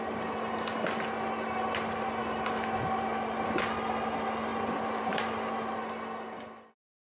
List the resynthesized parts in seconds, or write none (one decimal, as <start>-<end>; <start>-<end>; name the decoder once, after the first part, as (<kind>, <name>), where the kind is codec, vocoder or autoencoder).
none